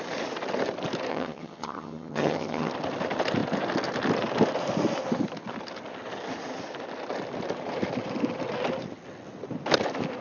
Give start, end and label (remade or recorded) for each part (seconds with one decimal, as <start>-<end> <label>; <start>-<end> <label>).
0.0-1.1 recorded; 1.1-2.7 remade; 2.7-10.2 recorded